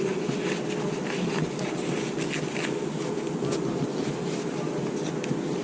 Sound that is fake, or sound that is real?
real